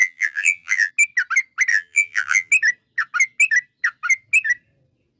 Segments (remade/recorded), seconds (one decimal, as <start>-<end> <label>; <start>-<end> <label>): 0.0-0.9 remade; 0.9-1.7 recorded; 1.7-2.5 remade; 2.5-5.2 recorded